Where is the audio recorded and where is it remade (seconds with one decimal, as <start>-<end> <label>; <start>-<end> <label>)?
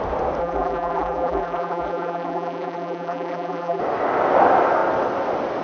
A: 0.0-0.4 recorded; 0.4-3.8 remade; 3.8-5.6 recorded